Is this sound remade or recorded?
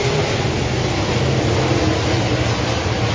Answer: recorded